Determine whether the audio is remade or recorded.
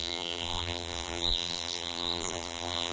remade